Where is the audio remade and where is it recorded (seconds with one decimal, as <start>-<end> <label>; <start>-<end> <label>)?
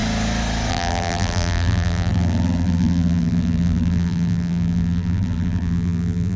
0.0-0.7 recorded; 0.7-6.4 remade